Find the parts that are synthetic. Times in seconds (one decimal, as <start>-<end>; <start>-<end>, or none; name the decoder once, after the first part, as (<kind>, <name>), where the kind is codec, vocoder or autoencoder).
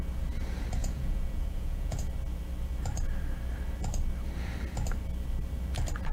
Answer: 0.8-2.1 (vocoder, Vocos)